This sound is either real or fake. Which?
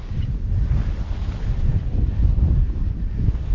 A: real